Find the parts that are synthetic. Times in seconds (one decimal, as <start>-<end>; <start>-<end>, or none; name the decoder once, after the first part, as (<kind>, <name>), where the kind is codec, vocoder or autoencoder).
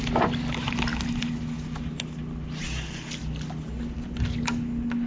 none